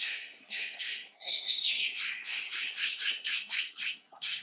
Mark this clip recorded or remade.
remade